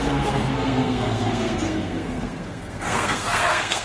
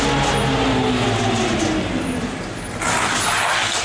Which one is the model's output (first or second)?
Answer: first